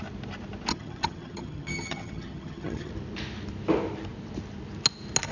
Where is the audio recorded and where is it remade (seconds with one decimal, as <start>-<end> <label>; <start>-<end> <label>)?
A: 0.0-0.7 recorded; 0.7-2.9 remade; 2.9-5.3 recorded